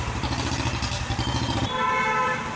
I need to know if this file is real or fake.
fake